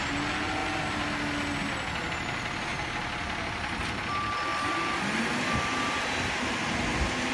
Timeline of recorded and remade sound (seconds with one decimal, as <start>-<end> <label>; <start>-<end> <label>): 0.0-7.3 recorded